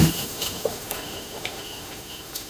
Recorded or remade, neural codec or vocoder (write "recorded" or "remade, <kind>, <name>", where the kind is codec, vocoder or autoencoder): remade, autoencoder, DAC-VAE